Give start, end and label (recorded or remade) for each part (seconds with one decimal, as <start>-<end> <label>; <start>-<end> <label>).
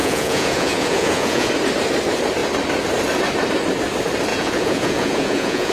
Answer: 0.0-1.5 remade; 1.5-4.3 recorded; 4.3-5.7 remade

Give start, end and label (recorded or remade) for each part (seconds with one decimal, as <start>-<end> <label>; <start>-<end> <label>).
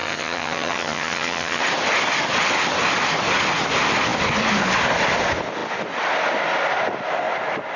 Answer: 0.0-1.6 remade; 1.6-7.8 recorded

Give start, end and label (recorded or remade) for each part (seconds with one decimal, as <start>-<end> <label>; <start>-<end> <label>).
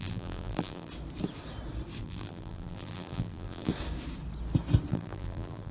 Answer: 0.0-0.9 remade; 0.9-2.0 recorded; 2.0-3.7 remade; 3.7-4.9 recorded; 4.9-5.7 remade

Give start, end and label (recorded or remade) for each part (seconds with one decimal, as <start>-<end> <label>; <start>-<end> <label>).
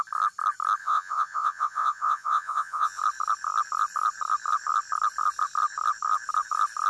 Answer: 0.0-0.8 recorded; 0.8-3.0 remade; 3.0-6.9 recorded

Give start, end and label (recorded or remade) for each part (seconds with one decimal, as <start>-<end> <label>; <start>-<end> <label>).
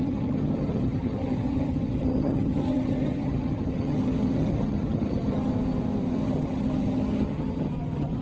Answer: 0.0-5.5 remade; 5.5-6.1 recorded; 6.1-8.2 remade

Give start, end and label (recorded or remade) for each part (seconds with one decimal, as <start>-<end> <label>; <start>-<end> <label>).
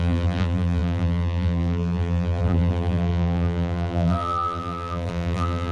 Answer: 0.0-5.7 remade